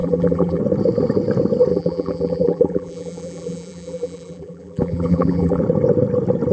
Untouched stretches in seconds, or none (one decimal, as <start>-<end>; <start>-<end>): 0.6-1.7; 5.6-6.5